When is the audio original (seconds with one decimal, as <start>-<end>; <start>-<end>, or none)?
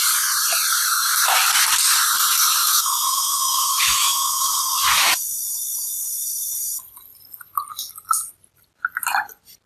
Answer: 0.0-2.6; 4.6-9.7